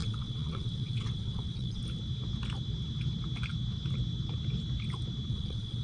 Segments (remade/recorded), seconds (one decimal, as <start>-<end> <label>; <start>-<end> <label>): 0.0-1.8 remade; 1.8-5.3 recorded; 5.3-5.8 remade